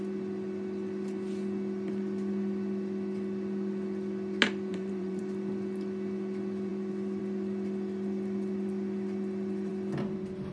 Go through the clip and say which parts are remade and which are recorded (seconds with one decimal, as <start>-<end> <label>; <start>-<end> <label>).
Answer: 0.0-4.7 recorded; 4.7-5.2 remade; 5.2-10.5 recorded